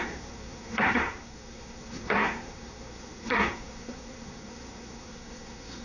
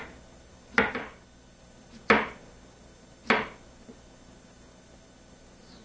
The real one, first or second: second